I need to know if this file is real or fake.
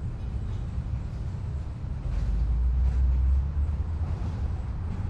real